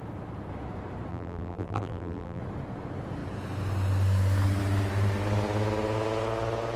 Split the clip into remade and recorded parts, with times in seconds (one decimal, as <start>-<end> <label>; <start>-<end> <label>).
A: 0.0-1.1 recorded; 1.1-2.4 remade; 2.4-6.8 recorded